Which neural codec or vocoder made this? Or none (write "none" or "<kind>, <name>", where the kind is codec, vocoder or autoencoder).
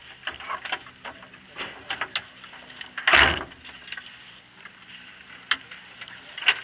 none